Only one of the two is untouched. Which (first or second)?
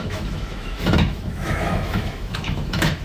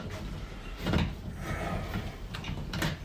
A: second